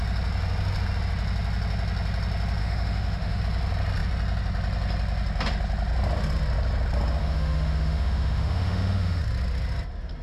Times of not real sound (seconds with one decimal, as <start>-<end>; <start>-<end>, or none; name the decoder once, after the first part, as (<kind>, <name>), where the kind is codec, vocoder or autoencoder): 2.6-3.4 (autoencoder, DAC-VAE); 7.2-9.2